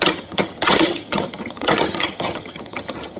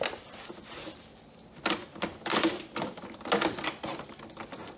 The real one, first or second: second